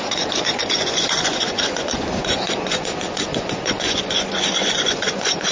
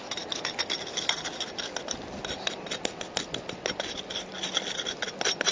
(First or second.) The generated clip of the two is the first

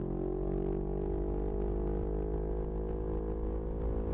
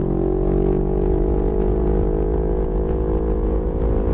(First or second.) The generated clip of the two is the second